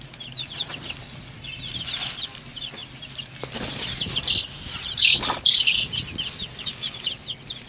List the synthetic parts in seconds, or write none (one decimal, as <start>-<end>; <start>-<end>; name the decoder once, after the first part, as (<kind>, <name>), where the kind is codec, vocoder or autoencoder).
none

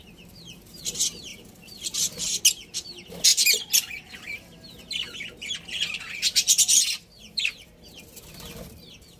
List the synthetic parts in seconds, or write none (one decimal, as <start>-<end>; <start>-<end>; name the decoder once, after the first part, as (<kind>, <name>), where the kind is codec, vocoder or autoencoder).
1.3-2.4 (vocoder, BigVGAN v2); 3.3-4.2

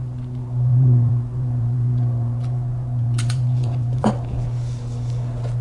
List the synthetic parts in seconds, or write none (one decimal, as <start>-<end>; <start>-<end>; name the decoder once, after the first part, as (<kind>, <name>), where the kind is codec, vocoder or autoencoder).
0.7-4.1 (vocoder, Vocos)